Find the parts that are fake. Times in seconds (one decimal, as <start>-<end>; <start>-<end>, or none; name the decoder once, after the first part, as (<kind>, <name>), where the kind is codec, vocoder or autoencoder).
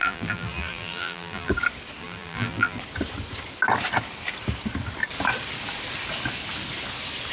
0.0-1.5 (vocoder, BigVGAN v2); 2.0-2.8